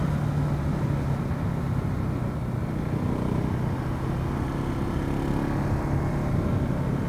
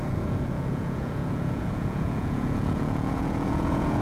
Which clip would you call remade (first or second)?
second